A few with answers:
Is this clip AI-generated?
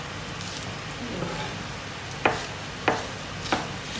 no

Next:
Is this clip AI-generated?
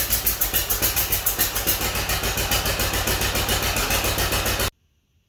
no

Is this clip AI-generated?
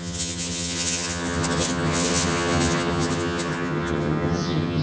yes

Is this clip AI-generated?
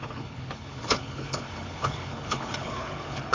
yes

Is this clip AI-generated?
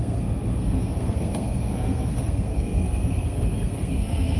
yes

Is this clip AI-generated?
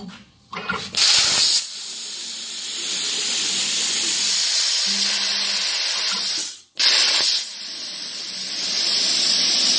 no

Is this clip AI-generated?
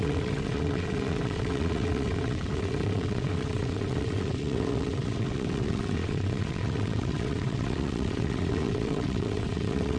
yes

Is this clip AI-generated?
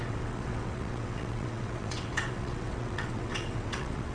yes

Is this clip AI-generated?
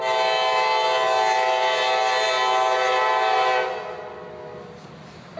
no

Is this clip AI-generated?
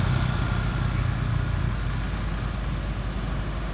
no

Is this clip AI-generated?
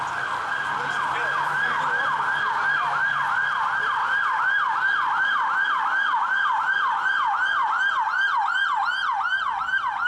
no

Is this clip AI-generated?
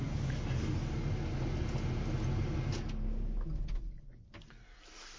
no